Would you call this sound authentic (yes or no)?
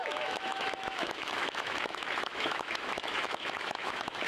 no